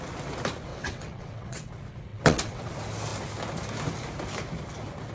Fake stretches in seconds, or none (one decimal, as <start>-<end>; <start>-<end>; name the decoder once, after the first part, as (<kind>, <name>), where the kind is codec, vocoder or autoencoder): 0.7-1.7 (vocoder, WaveNeXt); 2.1-2.7